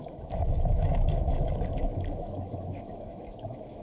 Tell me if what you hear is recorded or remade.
remade